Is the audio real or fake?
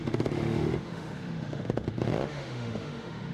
fake